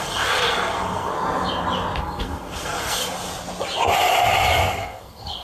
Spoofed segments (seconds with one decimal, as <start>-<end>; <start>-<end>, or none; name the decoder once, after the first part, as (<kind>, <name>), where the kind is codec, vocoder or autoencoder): 0.0-1.1 (codec, SNAC); 2.0-3.0; 4.6-5.4